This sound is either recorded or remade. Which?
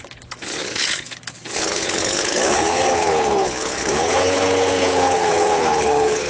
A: remade